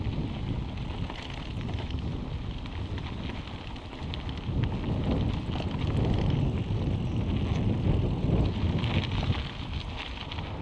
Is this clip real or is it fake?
real